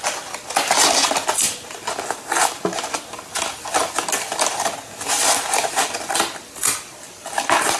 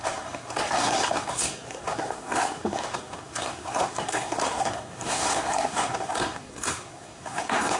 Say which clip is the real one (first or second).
first